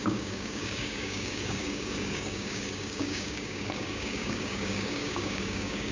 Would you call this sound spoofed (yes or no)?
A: yes